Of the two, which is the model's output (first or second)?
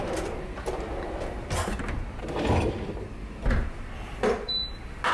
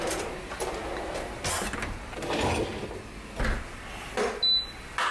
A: first